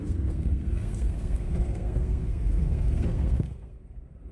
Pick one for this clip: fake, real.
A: fake